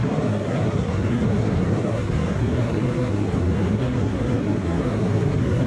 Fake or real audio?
fake